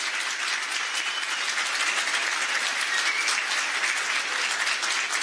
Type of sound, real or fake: real